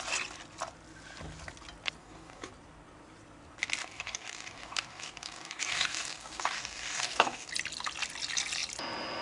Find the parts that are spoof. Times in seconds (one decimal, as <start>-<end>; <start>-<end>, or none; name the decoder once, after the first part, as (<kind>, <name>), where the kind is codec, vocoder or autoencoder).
2.0-2.5 (codec, DAC); 3.8-7.5